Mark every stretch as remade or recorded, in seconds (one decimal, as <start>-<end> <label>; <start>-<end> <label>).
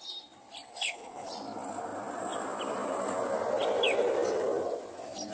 0.0-0.8 recorded; 0.8-1.3 remade; 1.3-5.3 recorded